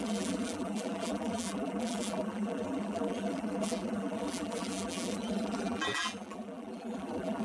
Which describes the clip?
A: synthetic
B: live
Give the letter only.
A